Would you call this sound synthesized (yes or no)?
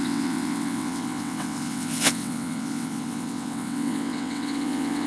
yes